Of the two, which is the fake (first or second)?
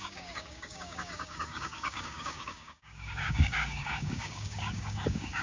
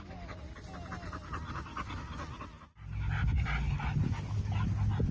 first